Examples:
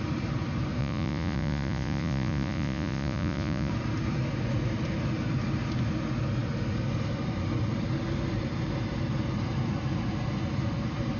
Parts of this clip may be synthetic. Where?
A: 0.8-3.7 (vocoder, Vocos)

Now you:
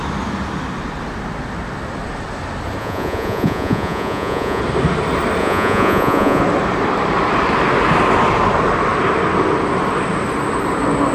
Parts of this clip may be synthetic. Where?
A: 2.8-4.6 (vocoder, Vocos); 5.4-6.4